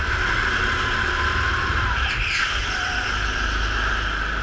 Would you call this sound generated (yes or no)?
no